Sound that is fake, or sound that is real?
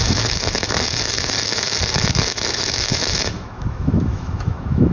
fake